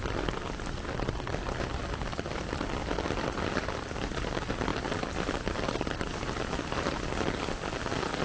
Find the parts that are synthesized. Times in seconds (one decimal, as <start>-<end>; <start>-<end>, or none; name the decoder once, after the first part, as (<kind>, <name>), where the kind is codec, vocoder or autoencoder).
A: none